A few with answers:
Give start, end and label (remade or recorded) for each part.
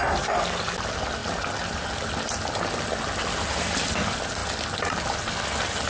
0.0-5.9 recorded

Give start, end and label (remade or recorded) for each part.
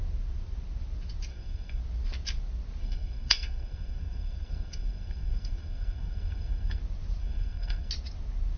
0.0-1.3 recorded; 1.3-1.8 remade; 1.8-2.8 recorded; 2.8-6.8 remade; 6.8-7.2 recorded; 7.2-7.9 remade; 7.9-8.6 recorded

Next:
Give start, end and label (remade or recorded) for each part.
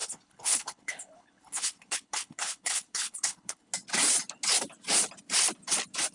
0.0-3.7 remade; 3.7-6.1 recorded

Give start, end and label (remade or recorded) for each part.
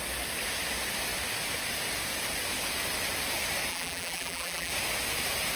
0.0-3.7 recorded; 3.7-4.7 remade; 4.7-5.6 recorded